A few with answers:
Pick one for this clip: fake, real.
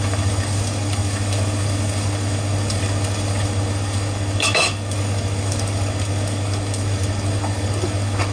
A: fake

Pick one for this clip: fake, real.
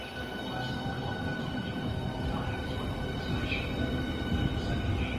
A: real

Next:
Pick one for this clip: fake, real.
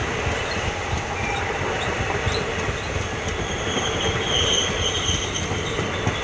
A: real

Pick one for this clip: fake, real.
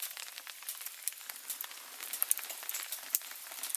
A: fake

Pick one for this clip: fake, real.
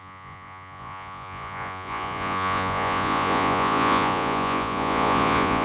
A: fake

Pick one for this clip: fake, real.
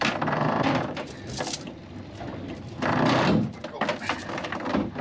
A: real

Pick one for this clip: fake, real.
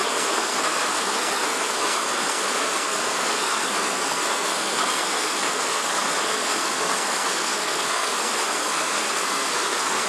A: fake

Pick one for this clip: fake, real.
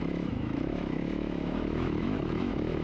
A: fake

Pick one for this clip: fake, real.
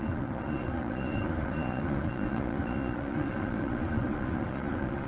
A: fake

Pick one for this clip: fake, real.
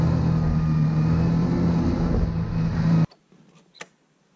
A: real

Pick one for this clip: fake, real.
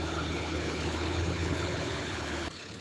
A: fake